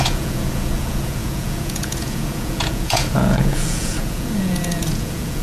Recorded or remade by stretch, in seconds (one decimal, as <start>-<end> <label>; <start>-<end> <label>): 0.0-5.4 remade